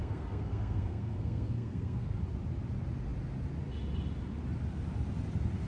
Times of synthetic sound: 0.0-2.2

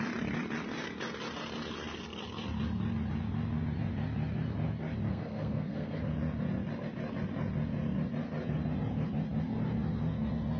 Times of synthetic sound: 5.1-6.0

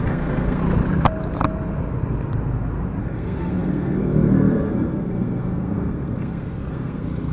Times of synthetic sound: 0.0-0.6; 3.0-7.3

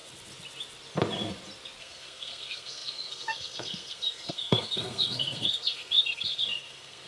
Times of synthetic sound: 1.8-7.1

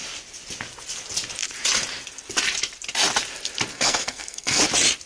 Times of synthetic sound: 3.7-4.6